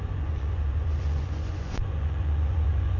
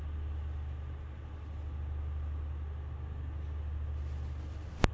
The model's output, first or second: first